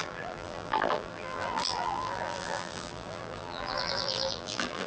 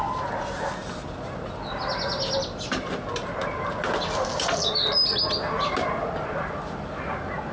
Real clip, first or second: second